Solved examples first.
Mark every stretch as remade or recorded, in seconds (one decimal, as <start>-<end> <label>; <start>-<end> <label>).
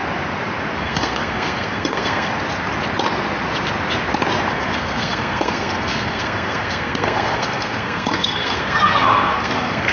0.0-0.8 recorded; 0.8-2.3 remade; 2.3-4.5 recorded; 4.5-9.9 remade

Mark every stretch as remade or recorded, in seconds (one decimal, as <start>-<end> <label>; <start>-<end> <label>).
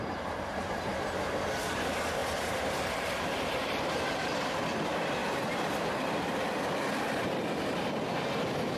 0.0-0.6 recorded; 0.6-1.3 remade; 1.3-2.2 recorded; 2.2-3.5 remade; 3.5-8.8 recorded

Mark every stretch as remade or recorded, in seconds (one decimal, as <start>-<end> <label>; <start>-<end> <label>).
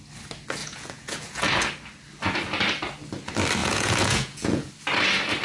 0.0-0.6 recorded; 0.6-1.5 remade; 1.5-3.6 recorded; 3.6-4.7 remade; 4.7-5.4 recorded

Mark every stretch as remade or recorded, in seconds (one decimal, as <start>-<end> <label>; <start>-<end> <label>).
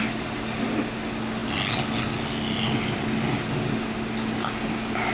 0.0-5.1 recorded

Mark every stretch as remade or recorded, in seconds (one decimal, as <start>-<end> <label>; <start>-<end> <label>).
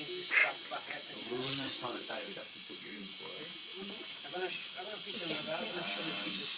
0.0-0.4 recorded; 0.4-3.2 remade; 3.2-3.7 recorded; 3.7-6.6 remade